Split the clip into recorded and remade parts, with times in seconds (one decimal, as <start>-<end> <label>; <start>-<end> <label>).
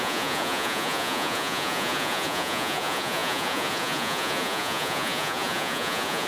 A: 0.0-6.3 remade